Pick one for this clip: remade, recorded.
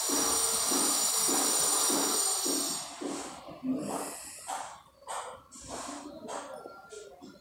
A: recorded